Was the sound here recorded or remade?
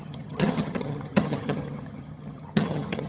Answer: remade